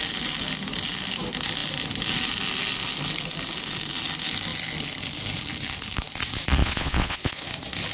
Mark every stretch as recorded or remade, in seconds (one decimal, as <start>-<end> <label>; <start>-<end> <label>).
0.0-6.6 recorded; 6.6-7.5 remade; 7.5-7.9 recorded